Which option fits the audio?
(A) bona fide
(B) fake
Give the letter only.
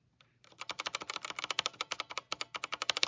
A